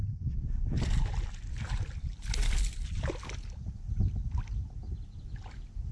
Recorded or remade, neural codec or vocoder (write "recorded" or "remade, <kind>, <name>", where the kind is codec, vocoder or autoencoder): recorded